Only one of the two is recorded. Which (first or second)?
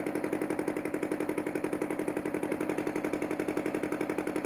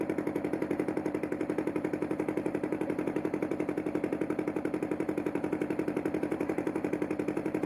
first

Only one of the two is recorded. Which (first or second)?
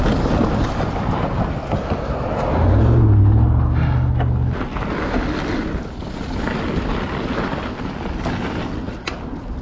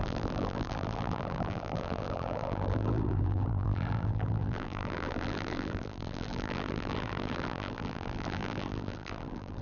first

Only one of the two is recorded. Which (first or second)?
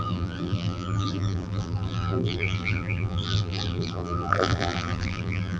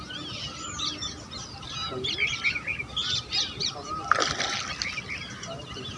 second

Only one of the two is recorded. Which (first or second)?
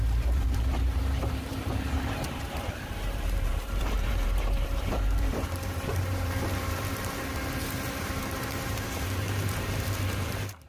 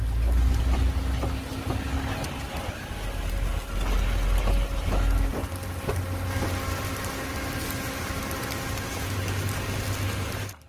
second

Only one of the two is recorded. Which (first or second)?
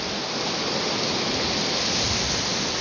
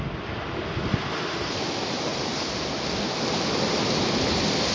first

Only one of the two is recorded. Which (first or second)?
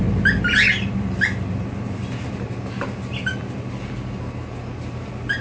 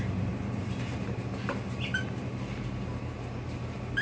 first